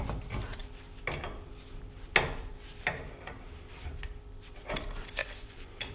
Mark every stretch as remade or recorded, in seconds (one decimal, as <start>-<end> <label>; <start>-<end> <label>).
0.0-5.2 recorded; 5.2-5.9 remade